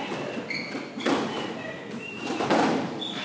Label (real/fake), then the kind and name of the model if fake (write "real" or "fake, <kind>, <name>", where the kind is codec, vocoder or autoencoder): real